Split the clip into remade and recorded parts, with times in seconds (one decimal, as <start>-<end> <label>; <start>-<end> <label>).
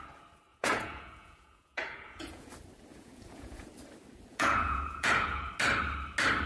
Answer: 0.0-0.5 recorded; 0.5-2.5 remade; 2.5-2.9 recorded; 2.9-3.7 remade; 3.7-4.3 recorded; 4.3-5.5 remade; 5.5-6.5 recorded